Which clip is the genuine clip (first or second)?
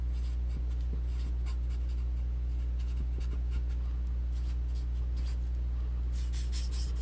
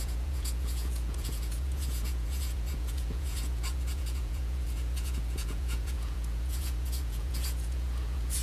first